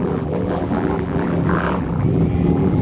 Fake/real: fake